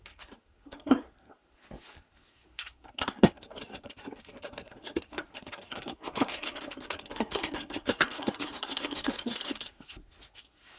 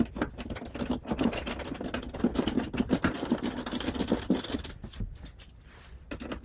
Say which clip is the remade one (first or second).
first